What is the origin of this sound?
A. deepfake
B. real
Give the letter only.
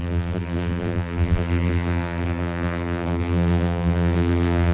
A